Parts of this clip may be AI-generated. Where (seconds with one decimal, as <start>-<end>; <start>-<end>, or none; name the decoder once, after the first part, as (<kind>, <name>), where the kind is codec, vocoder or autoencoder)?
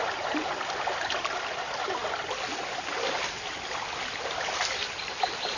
none